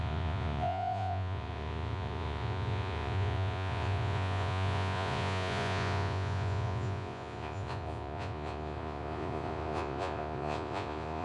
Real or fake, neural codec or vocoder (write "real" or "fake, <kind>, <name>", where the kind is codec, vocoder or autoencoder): fake, vocoder, Vocos